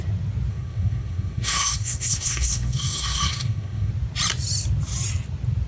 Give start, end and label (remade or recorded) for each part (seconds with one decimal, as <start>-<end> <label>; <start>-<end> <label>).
0.0-0.5 recorded; 0.5-3.9 remade; 3.9-5.7 recorded